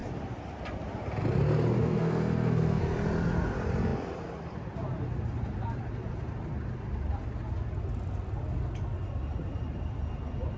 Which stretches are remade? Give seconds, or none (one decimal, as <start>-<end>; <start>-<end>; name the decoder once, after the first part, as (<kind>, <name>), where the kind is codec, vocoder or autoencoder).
1.8-2.8 (codec, SNAC)